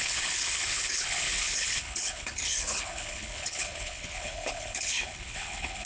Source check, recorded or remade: remade